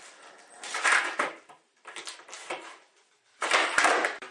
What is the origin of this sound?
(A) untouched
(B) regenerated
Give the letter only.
A